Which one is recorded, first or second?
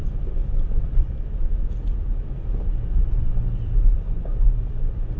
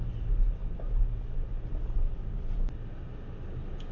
second